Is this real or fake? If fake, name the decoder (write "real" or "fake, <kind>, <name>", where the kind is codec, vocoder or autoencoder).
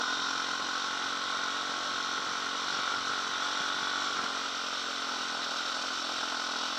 real